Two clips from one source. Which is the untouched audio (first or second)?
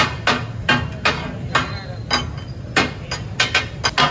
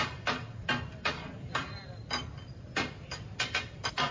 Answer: first